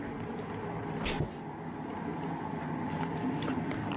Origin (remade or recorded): recorded